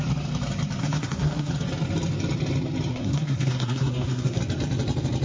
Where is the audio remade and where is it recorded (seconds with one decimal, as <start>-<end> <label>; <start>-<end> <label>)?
0.0-0.8 recorded; 0.8-1.5 remade; 1.5-2.9 recorded; 2.9-4.4 remade; 4.4-5.2 recorded